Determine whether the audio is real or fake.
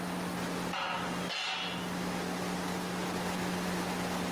real